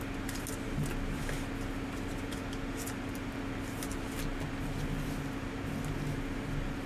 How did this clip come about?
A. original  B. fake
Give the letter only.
A